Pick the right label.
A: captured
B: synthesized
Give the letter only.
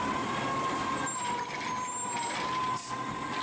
A